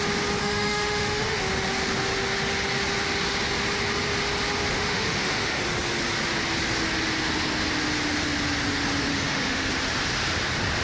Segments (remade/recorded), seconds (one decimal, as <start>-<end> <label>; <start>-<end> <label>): 0.0-0.4 recorded; 0.4-1.4 remade; 1.4-4.7 recorded; 4.7-5.6 remade; 5.6-9.1 recorded; 9.1-9.7 remade; 9.7-10.8 recorded